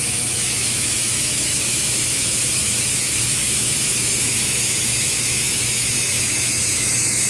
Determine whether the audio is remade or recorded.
remade